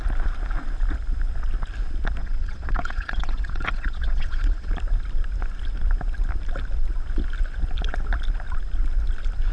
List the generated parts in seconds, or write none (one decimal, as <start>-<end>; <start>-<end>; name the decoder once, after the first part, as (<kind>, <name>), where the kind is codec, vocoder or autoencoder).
2.2-4.7 (vocoder, Vocos)